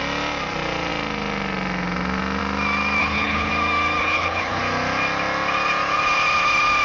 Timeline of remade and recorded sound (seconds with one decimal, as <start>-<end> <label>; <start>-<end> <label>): 0.0-3.0 recorded; 3.0-3.5 remade; 3.5-4.0 recorded; 4.0-4.6 remade; 4.6-6.8 recorded